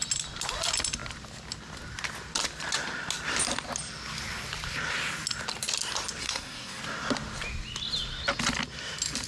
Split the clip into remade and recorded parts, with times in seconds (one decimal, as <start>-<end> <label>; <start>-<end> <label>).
0.0-6.2 recorded; 6.2-6.8 remade; 6.8-9.3 recorded